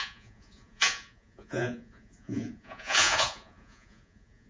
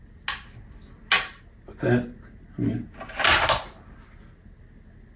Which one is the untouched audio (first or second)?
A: second